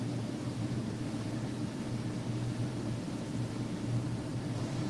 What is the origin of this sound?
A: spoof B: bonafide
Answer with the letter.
A